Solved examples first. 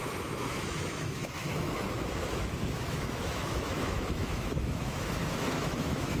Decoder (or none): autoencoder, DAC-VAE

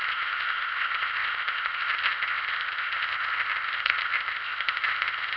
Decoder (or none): codec, ZipCodec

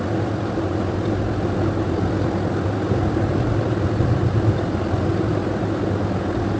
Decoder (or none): none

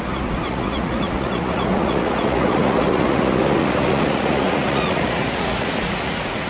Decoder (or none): vocoder, Vocos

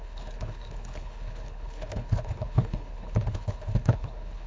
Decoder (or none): codec, HILCodec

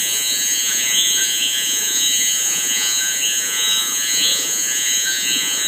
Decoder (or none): vocoder, Vocos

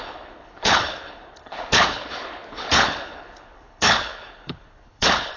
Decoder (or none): codec, HILCodec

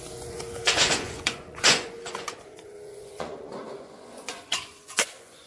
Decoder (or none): vocoder, Vocos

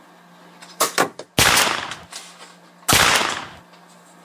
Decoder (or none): none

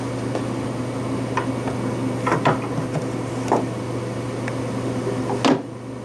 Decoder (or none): none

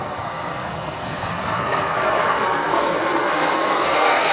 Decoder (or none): codec, SNAC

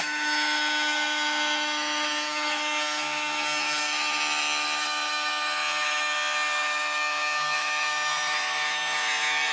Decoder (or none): autoencoder, DAC-VAE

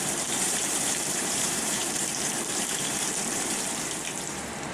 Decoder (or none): vocoder, BigVGAN v2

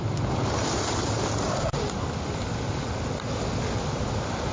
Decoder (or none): none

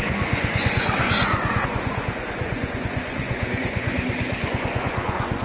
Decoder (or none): vocoder, Vocos